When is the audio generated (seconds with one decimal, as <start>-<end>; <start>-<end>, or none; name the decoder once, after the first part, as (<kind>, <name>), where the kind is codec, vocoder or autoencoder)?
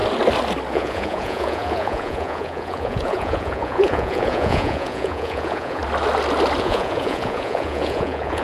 0.7-5.8 (vocoder, Vocos); 6.6-8.4